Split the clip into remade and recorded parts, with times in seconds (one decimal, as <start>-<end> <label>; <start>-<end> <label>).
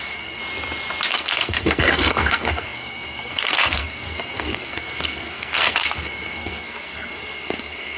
0.0-0.4 remade; 0.4-1.1 recorded; 1.1-8.0 remade